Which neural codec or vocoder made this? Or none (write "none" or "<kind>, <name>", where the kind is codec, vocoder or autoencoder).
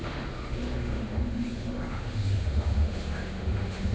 autoencoder, DAC-VAE